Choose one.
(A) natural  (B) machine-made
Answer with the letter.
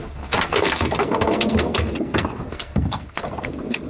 B